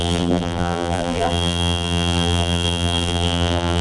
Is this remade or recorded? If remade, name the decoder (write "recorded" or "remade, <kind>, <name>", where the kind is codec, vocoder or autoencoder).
remade, vocoder, BigVGAN v2